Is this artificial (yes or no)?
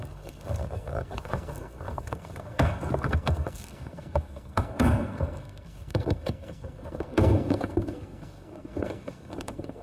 yes